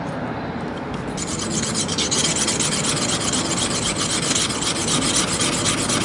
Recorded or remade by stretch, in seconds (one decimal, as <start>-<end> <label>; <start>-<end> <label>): 0.0-6.0 recorded